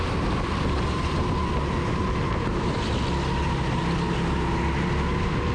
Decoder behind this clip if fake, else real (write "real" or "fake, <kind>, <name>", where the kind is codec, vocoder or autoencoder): real